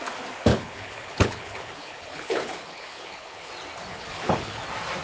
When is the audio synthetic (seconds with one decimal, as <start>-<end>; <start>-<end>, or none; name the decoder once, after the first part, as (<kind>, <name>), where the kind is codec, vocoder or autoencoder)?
0.5-3.5 (codec, HILCodec); 3.9-4.6